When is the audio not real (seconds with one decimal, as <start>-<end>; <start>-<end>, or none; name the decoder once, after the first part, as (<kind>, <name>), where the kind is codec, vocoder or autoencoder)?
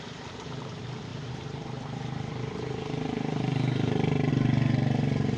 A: 0.0-5.4 (vocoder, BigVGAN v2)